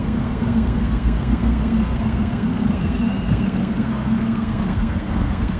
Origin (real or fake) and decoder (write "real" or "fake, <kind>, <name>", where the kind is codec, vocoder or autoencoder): fake, codec, SNAC